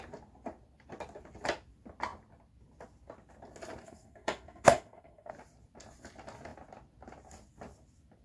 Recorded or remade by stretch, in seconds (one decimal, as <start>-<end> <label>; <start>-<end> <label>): 0.0-3.8 recorded; 3.8-5.3 remade; 5.3-8.2 recorded